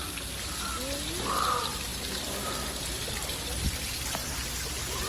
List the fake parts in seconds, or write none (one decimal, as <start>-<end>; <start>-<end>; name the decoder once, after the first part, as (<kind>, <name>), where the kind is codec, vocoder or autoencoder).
none

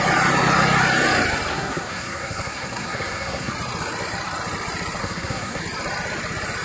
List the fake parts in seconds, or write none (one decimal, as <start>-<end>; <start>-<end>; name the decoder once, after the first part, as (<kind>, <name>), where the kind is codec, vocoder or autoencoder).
1.5-3.5 (codec, SNAC); 5.0-5.6

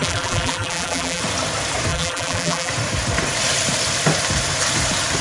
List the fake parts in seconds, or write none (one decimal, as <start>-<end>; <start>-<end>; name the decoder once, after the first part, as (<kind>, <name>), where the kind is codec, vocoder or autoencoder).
0.0-1.2 (vocoder, BigVGAN v2); 1.9-2.7

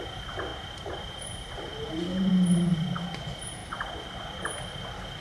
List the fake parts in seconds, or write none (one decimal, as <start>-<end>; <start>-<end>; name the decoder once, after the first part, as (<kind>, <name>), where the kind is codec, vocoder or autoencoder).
none

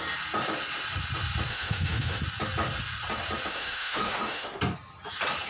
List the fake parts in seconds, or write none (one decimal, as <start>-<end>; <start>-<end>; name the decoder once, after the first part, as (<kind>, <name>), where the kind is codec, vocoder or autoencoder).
1.5-2.2 (autoencoder, DAC-VAE); 3.5-4.6

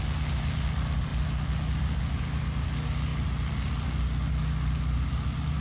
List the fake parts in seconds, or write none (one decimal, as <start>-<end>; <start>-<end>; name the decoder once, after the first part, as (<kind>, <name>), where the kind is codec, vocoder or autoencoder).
none

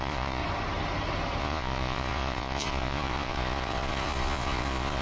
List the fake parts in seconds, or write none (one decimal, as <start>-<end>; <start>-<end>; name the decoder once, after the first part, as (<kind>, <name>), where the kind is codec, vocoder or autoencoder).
0.0-0.4 (vocoder, Vocos); 1.4-5.0

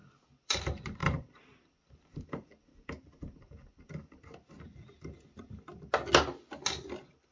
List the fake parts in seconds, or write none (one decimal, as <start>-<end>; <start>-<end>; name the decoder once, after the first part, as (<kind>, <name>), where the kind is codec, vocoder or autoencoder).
0.0-0.6 (vocoder, BigVGAN v2); 1.0-5.4